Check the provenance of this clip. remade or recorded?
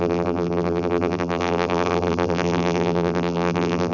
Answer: remade